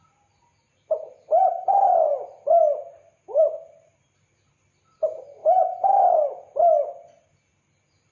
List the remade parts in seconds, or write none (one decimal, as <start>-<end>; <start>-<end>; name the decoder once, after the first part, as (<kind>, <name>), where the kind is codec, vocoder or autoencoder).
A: none